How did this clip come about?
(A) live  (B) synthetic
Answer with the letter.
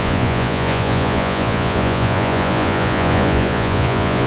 B